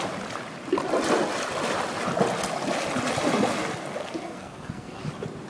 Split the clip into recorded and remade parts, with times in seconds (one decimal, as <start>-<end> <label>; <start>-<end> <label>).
0.0-4.0 recorded; 4.0-5.0 remade; 5.0-5.5 recorded